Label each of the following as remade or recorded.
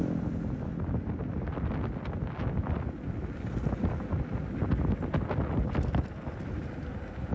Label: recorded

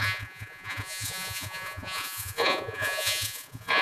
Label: remade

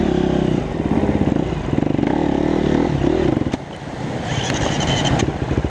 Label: recorded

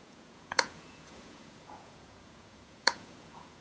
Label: remade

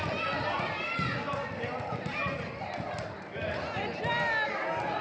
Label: recorded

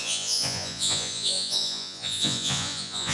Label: remade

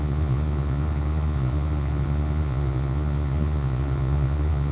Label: remade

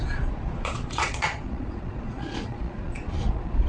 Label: remade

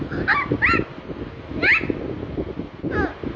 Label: recorded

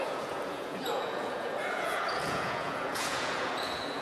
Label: remade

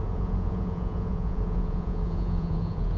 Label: remade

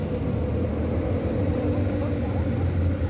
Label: recorded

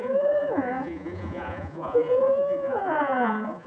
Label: remade